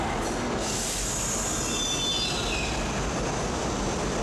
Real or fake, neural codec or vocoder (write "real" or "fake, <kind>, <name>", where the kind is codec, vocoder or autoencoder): real